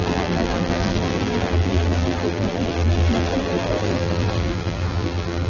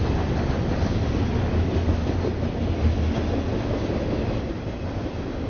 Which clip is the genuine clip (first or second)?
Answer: second